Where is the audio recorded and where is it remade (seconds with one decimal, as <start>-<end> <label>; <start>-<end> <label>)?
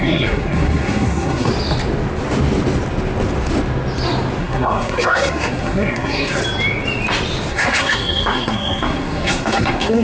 0.0-1.5 remade; 1.5-4.4 recorded; 4.4-6.4 remade; 6.4-7.5 recorded; 7.5-10.0 remade